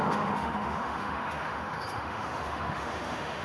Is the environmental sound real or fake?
fake